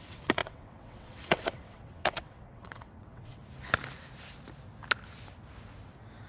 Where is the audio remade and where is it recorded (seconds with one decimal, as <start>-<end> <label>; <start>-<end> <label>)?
0.0-3.4 remade; 3.4-6.3 recorded